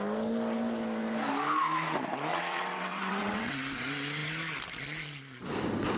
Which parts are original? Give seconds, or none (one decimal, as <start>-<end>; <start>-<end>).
0.0-2.3; 3.6-6.0